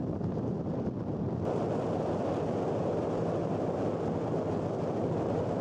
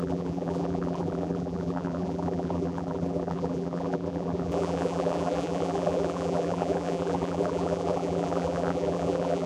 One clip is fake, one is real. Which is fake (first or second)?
second